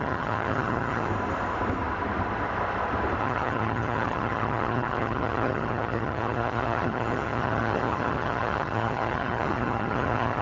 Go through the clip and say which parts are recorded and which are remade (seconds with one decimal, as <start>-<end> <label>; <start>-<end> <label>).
0.0-1.1 remade; 1.1-3.2 recorded; 3.2-10.4 remade